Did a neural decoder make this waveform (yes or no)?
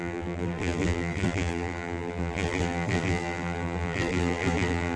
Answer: yes